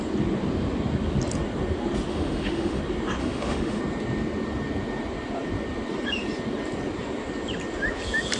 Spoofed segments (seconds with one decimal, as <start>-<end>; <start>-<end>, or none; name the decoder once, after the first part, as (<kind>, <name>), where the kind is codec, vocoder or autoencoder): 2.1-2.8 (autoencoder, DAC-VAE); 3.2-3.8